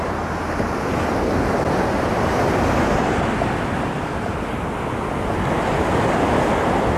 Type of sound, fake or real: real